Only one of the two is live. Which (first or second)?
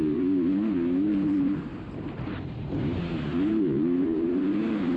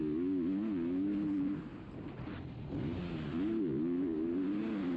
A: second